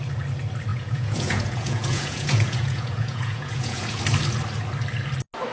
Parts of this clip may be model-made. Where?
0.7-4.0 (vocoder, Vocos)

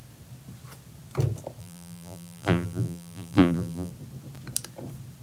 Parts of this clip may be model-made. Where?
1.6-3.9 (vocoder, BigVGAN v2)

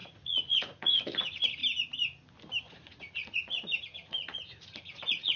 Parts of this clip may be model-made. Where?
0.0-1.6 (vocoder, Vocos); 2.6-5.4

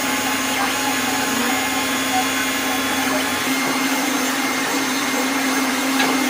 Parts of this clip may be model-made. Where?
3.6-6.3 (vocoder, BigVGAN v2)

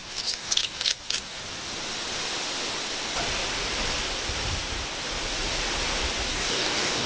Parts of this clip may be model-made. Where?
0.0-1.4 (codec, DAC); 6.3-7.1